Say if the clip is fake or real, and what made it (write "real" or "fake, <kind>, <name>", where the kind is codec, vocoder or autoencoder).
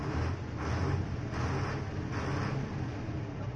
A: real